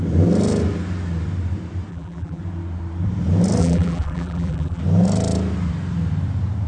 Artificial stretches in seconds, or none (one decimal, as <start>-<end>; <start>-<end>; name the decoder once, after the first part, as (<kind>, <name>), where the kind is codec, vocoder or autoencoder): 1.9-2.4 (vocoder, BigVGAN v2); 3.6-4.8